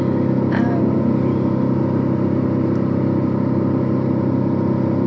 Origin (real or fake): real